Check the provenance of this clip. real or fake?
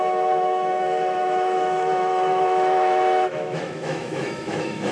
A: fake